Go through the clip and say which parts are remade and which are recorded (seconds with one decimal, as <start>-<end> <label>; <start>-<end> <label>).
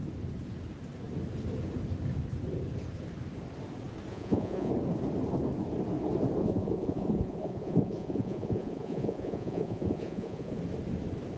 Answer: 0.0-4.1 recorded; 4.1-4.7 remade; 4.7-6.4 recorded; 6.4-10.6 remade; 10.6-11.4 recorded